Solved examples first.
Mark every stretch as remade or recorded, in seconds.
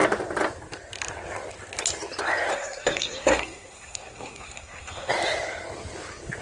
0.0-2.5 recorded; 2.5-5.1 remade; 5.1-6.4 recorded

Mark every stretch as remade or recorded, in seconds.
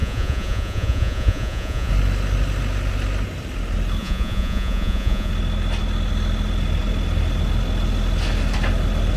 0.0-1.9 remade; 1.9-4.0 recorded; 4.0-5.3 remade; 5.3-9.2 recorded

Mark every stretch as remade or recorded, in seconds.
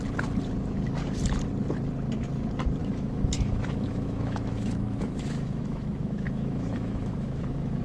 0.0-2.8 recorded; 2.8-7.8 remade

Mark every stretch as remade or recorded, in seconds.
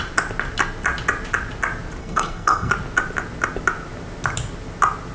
0.0-2.0 recorded; 2.0-2.7 remade; 2.7-5.1 recorded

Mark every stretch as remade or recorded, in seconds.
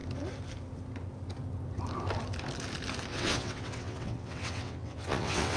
0.0-3.1 recorded; 3.1-5.6 remade